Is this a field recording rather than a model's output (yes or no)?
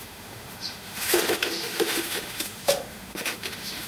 no